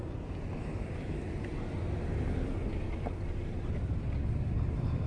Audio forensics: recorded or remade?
recorded